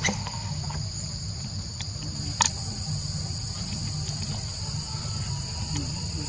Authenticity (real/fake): real